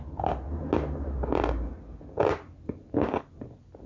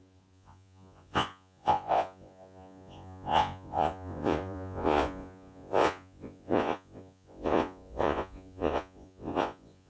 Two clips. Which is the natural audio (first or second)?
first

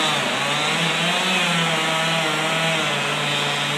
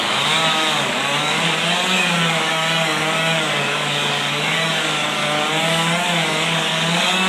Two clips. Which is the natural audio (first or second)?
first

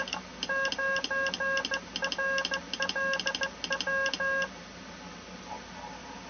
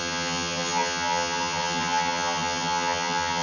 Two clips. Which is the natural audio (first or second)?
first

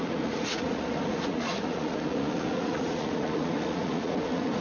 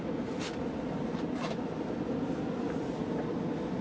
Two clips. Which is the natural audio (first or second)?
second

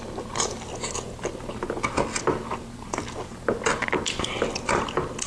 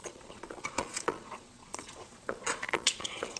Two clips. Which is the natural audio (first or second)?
first